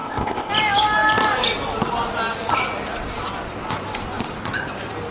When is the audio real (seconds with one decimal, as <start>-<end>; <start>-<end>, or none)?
0.5-5.1